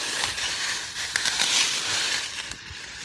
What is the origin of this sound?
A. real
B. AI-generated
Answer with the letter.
A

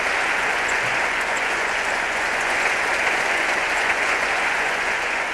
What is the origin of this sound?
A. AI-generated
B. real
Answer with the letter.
A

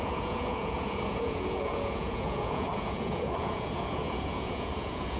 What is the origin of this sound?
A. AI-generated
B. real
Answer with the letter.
A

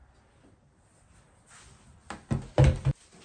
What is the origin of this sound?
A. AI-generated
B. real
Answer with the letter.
B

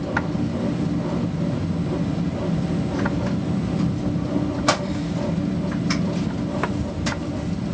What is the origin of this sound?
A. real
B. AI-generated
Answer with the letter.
A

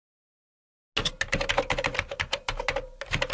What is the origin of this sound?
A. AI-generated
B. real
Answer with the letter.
B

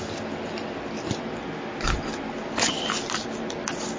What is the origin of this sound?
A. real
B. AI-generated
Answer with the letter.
A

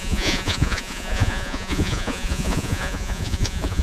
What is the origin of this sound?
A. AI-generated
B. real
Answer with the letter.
A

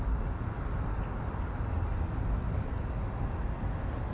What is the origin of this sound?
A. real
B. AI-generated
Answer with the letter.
A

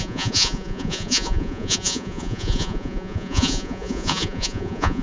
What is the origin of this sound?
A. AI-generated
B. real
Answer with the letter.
A